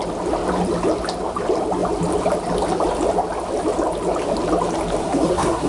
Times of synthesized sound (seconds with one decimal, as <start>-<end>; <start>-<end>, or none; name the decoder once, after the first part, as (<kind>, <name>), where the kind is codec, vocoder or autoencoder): 5.0-5.7 (codec, SNAC)